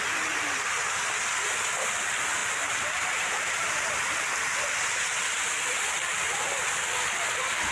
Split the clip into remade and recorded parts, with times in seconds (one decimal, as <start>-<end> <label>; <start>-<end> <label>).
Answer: 0.0-7.7 recorded